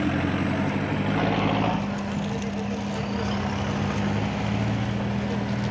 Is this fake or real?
real